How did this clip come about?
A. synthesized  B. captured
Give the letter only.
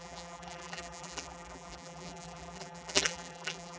A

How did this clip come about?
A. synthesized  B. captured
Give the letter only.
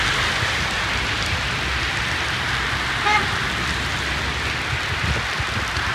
B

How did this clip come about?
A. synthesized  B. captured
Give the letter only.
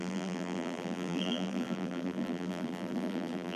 A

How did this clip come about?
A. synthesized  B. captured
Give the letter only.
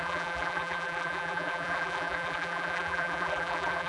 A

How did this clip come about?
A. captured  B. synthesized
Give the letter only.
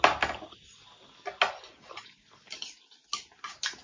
A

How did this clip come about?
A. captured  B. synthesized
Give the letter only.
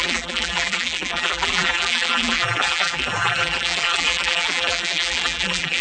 B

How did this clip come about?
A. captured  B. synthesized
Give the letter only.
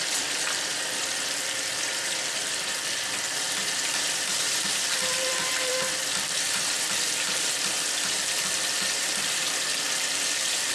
B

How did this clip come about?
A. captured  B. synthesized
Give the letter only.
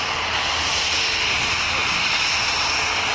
A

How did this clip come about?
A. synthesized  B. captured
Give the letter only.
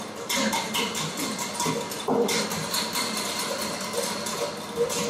B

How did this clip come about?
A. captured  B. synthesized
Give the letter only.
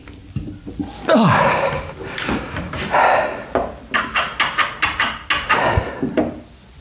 A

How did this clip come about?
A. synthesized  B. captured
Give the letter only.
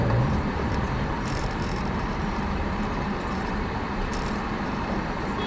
A